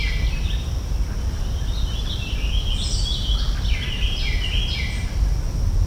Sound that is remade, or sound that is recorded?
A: recorded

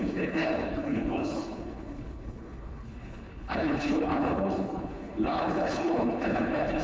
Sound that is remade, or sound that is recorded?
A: remade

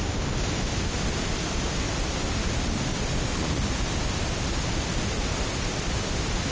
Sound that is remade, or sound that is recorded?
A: recorded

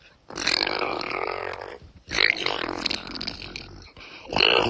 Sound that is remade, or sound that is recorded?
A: recorded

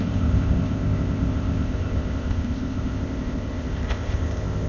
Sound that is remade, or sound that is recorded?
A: remade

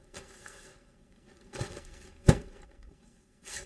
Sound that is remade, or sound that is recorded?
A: remade